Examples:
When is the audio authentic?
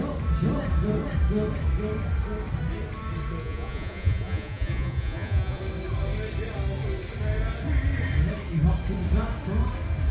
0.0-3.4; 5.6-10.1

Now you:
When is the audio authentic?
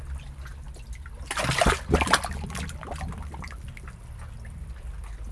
0.0-5.3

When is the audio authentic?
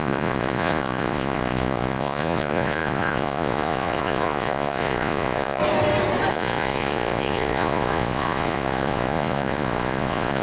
5.6-6.3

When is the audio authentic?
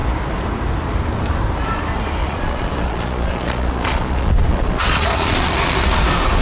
0.0-2.2; 6.0-6.4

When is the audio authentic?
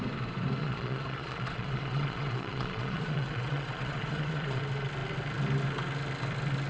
0.0-0.6; 4.6-6.7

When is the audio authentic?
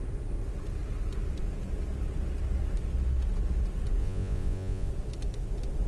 0.0-4.0; 4.9-5.9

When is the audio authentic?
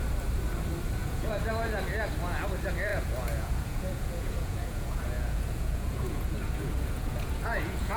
0.0-1.0; 1.5-2.9